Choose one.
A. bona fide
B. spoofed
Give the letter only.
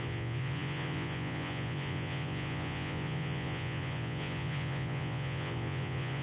B